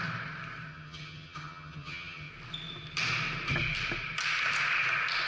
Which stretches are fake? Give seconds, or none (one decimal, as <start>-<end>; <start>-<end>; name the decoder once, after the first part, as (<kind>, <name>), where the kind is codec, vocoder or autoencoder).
0.7-2.3 (vocoder, HiFi-GAN)